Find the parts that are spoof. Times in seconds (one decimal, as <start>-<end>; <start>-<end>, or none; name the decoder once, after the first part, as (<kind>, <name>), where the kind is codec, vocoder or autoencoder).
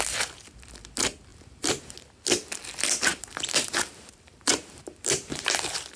1.3-1.8 (vocoder, BigVGAN v2); 3.1-5.5